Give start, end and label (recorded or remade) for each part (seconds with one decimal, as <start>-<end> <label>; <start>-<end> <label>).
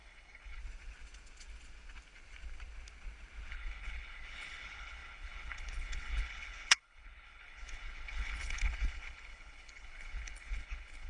0.0-0.6 remade; 0.6-3.5 recorded; 3.5-11.1 remade